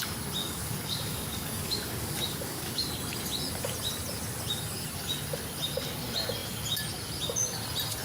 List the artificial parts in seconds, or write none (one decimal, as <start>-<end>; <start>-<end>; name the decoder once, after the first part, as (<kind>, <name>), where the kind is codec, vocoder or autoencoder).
0.4-2.9 (codec, DAC)

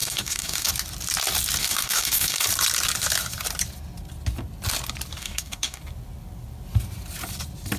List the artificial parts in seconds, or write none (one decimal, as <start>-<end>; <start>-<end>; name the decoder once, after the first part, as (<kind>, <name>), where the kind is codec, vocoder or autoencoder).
0.0-0.7 (codec, DAC); 1.6-2.4; 5.2-5.8

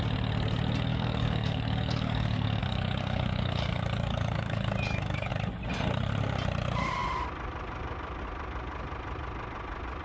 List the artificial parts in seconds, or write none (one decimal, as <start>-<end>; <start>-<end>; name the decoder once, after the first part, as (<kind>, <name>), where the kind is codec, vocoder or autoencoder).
0.9-5.3 (codec, DAC)

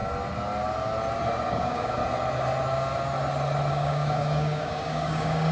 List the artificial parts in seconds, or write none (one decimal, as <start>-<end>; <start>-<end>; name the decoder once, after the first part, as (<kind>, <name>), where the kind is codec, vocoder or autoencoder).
1.5-2.0 (codec, DAC); 3.7-5.5

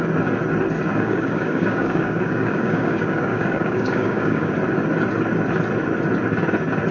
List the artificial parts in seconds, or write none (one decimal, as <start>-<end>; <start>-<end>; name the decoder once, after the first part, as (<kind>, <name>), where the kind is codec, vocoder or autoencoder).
0.9-4.5 (codec, DAC)

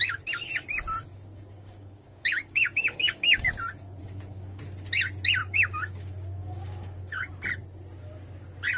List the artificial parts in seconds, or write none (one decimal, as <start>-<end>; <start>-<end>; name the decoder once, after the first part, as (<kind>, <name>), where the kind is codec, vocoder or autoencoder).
1.1-3.5 (codec, DAC); 4.0-4.6; 5.4-7.3